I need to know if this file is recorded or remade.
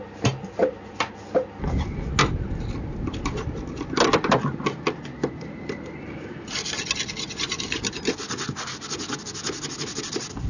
recorded